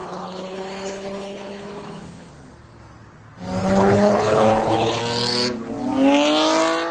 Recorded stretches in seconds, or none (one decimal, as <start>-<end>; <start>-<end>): 2.3-3.6; 5.0-6.9